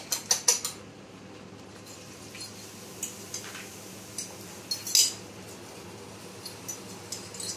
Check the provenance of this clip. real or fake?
real